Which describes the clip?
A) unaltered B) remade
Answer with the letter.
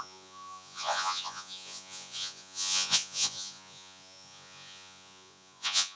B